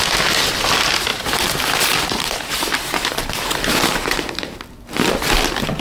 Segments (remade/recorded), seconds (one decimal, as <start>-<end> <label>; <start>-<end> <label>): 0.0-1.1 recorded; 1.1-4.6 remade; 4.6-5.8 recorded